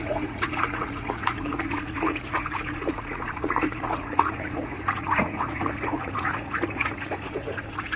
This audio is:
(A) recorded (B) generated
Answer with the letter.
B